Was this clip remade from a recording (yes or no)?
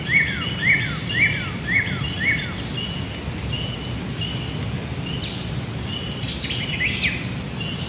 no